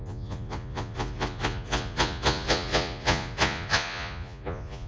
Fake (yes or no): yes